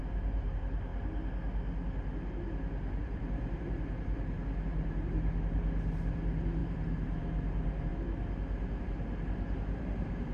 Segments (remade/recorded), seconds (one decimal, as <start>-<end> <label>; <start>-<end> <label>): 0.0-0.9 remade; 0.9-3.0 recorded; 3.0-7.9 remade; 7.9-8.8 recorded; 8.8-10.3 remade